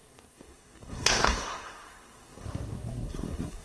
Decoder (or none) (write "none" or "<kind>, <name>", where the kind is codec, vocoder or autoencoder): codec, SNAC